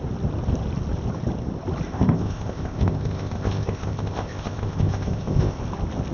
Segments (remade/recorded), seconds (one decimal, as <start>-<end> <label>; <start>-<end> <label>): 0.0-1.9 recorded; 1.9-5.6 remade; 5.6-6.1 recorded